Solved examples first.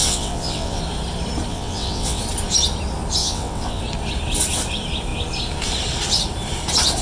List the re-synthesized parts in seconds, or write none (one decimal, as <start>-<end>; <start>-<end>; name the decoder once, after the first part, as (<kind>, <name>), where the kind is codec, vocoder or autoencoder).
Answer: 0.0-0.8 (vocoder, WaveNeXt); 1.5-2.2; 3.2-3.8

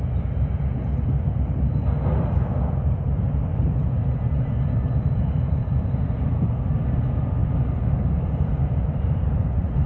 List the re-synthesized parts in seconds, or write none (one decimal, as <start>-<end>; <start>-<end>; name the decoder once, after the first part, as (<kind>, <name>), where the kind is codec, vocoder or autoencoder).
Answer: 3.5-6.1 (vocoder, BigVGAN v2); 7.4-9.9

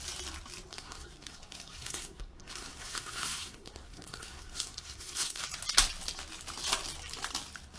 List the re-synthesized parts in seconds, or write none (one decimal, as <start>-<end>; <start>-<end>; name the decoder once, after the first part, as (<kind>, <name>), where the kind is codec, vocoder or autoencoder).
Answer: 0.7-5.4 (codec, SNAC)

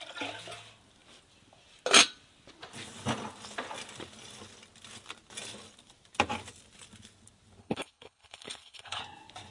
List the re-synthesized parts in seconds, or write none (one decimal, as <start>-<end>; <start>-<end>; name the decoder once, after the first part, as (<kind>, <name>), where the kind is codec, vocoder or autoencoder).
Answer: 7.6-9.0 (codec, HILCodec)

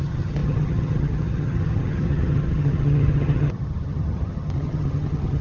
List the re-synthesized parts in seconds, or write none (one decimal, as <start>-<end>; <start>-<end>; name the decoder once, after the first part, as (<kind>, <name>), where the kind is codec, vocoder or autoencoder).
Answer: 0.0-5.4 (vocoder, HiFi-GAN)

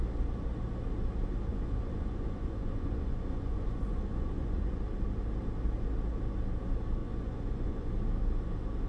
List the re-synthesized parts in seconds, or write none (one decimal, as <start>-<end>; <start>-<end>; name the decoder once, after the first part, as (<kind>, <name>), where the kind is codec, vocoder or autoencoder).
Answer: 1.5-4.8 (vocoder, Vocos); 7.0-7.9